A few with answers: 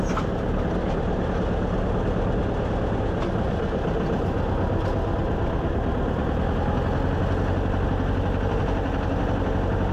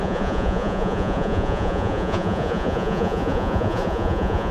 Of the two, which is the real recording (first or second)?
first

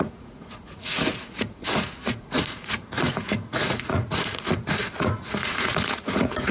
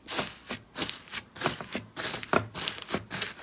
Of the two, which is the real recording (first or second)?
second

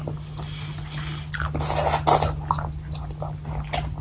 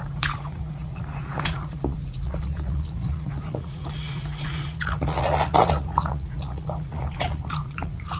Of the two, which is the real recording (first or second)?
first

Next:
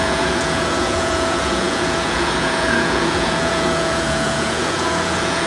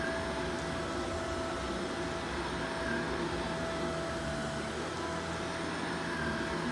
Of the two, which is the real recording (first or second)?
second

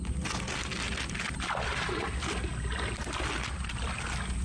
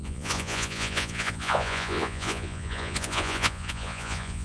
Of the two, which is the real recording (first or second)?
first